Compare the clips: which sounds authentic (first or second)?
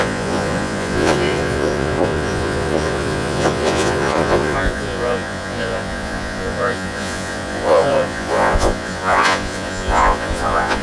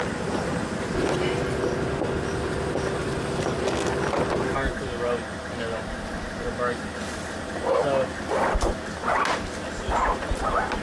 second